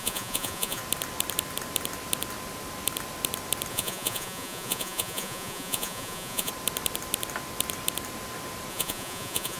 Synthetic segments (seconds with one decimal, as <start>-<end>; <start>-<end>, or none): 0.0-0.8; 3.7-6.5; 8.7-9.6